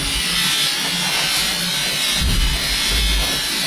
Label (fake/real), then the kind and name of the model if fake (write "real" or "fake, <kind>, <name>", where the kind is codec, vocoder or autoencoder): real